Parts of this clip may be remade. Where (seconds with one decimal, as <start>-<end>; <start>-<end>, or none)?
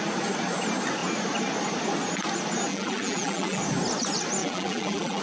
2.7-3.6; 4.4-5.2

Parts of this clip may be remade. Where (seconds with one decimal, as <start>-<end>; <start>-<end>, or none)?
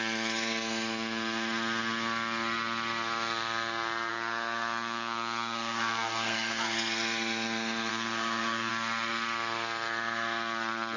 4.1-6.5; 7.9-8.7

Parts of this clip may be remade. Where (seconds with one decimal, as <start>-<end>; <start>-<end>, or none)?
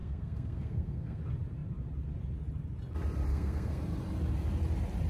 0.0-1.2; 3.3-3.8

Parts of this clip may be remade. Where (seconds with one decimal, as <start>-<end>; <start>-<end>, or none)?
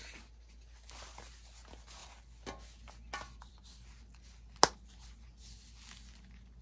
none